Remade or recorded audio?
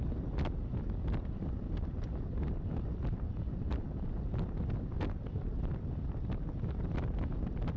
recorded